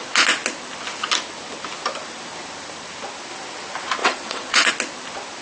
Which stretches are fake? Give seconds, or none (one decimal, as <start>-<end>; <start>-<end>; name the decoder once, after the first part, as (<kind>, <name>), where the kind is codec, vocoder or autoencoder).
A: 4.0-4.7 (vocoder, WaveNeXt)